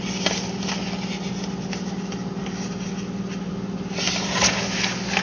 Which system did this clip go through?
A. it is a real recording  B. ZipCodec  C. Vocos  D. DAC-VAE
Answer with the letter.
A